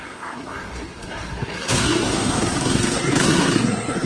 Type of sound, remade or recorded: remade